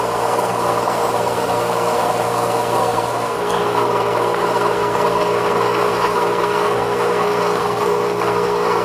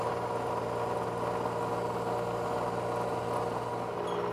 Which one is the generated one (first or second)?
first